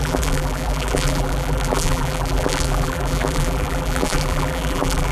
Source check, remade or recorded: remade